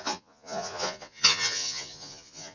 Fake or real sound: fake